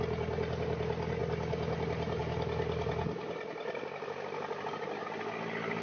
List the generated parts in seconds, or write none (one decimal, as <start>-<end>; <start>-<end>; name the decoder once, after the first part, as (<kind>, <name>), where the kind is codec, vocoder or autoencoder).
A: 1.2-4.7 (vocoder, BigVGAN v2)